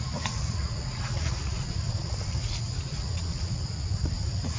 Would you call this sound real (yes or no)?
no